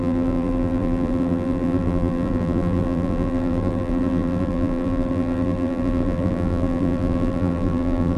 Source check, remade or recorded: remade